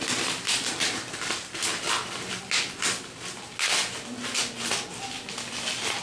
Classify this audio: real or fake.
real